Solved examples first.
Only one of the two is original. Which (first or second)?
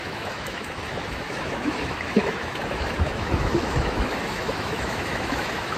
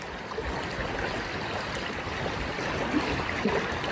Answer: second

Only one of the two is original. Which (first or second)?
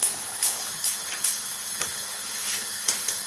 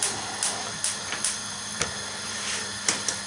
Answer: second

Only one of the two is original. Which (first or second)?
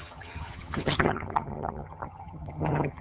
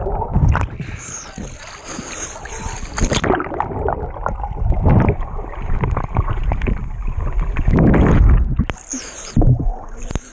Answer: second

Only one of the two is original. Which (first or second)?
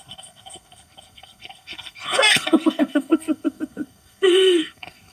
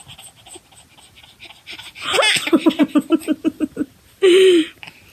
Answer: second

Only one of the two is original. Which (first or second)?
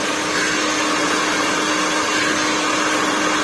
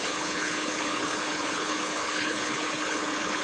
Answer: first